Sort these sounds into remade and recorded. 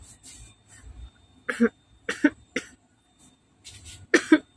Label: recorded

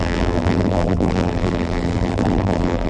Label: remade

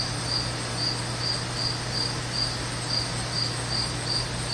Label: recorded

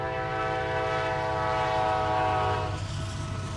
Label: recorded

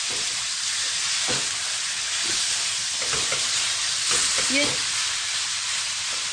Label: recorded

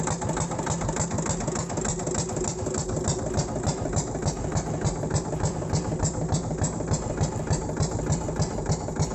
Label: recorded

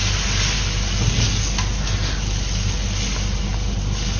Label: recorded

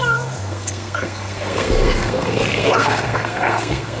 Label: remade